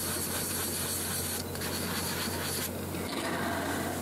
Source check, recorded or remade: recorded